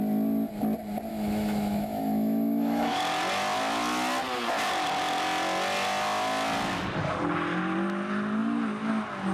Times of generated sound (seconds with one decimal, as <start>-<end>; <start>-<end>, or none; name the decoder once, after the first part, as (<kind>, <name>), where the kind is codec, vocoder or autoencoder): 1.1-3.0 (autoencoder, DAC-VAE)